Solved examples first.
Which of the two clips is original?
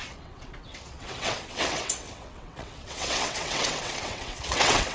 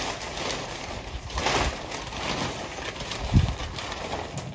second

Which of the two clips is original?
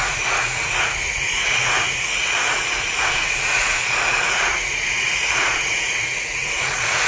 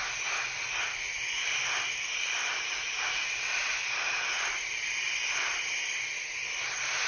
second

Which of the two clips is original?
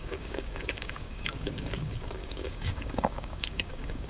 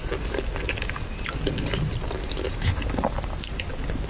second